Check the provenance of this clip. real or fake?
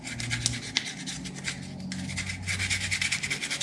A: real